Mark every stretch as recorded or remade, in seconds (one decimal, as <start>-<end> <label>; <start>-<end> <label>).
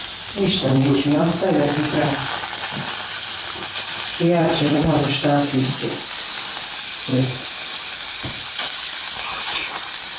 0.0-10.2 remade